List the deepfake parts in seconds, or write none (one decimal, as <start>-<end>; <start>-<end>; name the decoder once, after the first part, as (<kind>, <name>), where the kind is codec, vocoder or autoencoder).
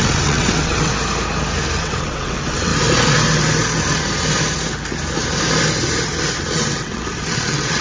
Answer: 0.0-0.9 (vocoder, WaveNeXt); 1.8-2.7; 6.4-7.8